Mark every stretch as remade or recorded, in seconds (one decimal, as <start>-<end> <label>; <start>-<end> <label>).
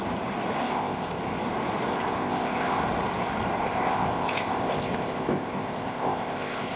0.0-0.6 recorded; 0.6-1.2 remade; 1.2-1.9 recorded; 1.9-2.8 remade; 2.8-3.6 recorded; 3.6-6.8 remade